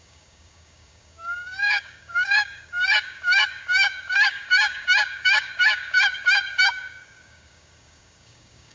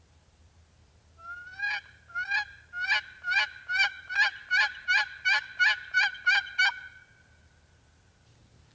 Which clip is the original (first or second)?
second